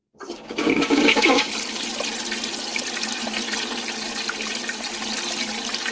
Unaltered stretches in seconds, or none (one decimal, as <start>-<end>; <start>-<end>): 1.5-5.9

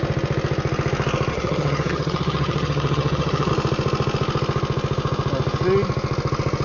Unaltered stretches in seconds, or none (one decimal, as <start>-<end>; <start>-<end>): 0.0-1.3; 3.5-6.6

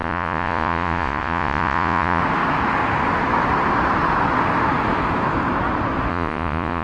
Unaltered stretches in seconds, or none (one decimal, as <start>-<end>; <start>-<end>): 2.2-6.1

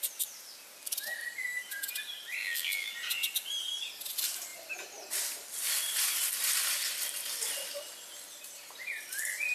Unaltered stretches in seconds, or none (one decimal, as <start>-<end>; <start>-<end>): 0.0-2.4; 2.9-9.5